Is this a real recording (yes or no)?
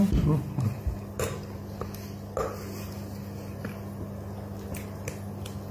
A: yes